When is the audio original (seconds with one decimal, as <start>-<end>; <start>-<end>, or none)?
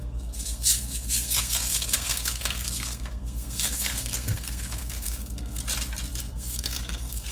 5.6-6.2